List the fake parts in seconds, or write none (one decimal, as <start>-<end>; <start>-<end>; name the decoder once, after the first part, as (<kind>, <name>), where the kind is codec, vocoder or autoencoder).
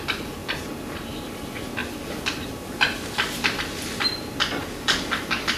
4.6-5.6 (codec, DAC)